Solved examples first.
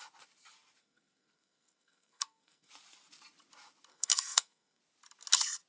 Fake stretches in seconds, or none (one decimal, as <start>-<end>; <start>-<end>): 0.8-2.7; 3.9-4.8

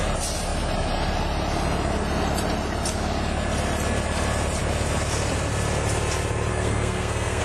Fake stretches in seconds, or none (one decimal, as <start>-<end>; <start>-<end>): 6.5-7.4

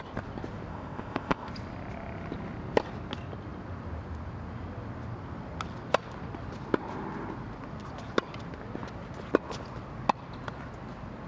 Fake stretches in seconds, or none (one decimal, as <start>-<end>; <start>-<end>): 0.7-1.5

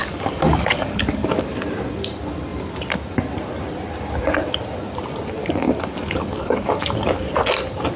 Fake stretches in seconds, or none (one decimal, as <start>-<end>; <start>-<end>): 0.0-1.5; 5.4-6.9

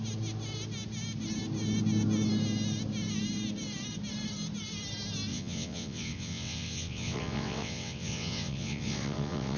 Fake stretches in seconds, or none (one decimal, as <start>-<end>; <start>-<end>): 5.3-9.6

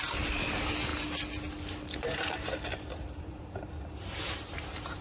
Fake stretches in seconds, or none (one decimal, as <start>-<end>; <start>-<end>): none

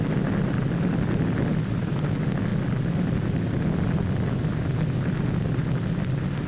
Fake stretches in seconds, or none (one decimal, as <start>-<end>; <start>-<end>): none

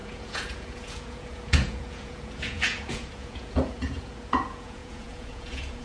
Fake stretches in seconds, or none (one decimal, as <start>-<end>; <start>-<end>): 0.0-5.8